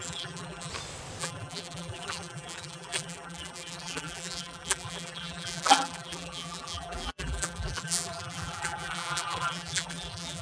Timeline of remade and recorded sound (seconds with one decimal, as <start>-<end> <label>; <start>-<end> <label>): 0.0-0.7 remade; 0.7-1.2 recorded; 1.2-10.4 remade